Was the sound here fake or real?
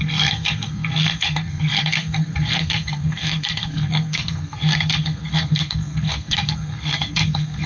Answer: fake